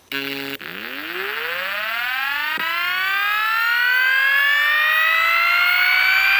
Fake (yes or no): no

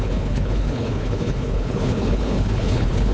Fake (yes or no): yes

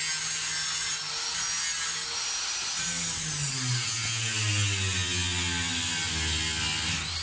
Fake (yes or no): no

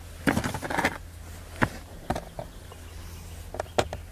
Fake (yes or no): no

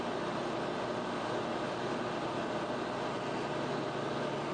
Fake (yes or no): no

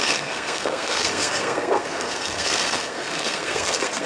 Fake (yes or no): yes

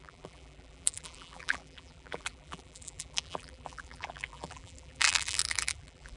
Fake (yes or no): yes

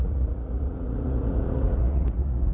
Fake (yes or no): yes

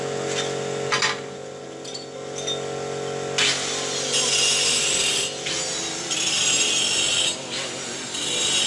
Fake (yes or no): no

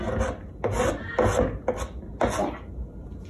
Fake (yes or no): no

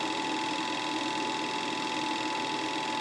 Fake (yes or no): no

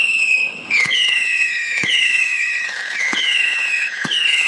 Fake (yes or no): yes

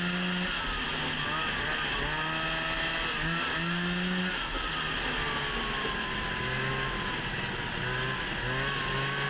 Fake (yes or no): no